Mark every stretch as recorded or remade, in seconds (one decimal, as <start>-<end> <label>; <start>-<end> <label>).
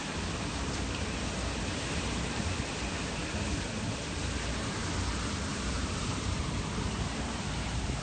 0.0-5.5 recorded; 5.5-6.4 remade; 6.4-8.0 recorded